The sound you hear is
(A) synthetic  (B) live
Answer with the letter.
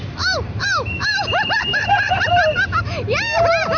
A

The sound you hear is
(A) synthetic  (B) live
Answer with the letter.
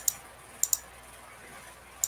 B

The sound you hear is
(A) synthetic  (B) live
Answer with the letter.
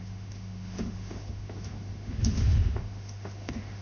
A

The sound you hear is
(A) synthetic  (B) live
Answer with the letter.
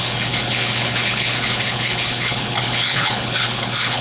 A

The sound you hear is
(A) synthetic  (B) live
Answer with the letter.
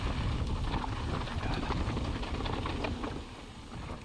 B